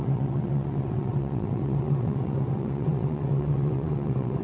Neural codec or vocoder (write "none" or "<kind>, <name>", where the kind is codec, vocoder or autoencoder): vocoder, WaveNeXt